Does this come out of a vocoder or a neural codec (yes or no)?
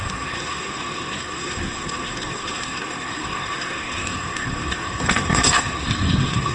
yes